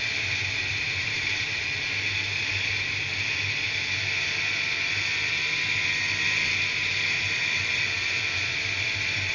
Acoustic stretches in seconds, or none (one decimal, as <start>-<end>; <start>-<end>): 0.0-0.7; 3.1-9.3